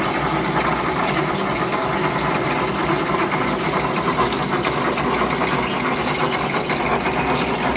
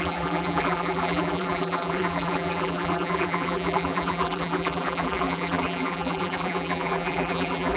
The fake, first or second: second